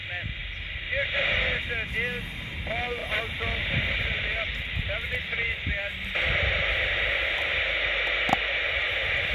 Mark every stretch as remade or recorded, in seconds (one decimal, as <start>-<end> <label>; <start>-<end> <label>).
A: 0.0-3.0 recorded; 3.0-7.3 remade; 7.3-9.3 recorded